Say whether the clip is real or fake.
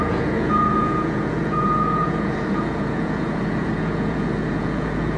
fake